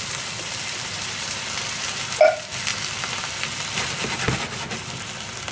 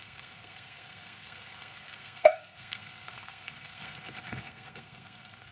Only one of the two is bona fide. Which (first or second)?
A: first